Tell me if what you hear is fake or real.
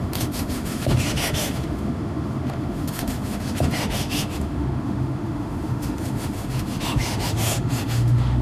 fake